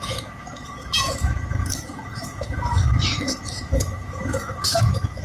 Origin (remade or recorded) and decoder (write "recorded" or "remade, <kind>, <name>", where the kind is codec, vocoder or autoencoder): remade, autoencoder, DAC-VAE